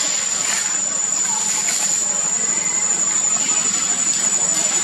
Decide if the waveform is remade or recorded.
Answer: recorded